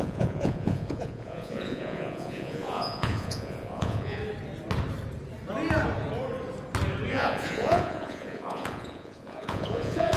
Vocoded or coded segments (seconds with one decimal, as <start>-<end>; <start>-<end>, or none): 0.0-4.2; 7.1-10.2